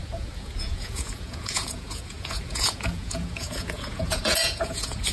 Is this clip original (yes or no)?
no